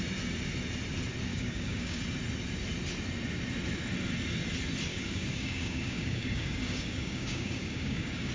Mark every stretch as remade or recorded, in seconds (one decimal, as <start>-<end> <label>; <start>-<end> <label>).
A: 0.0-1.3 recorded; 1.3-2.0 remade; 2.0-4.9 recorded; 4.9-8.3 remade